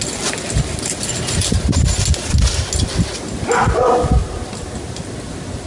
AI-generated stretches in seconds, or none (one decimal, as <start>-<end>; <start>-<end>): none